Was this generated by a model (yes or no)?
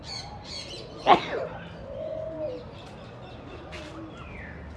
no